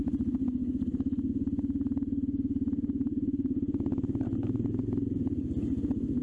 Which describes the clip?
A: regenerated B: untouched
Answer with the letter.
B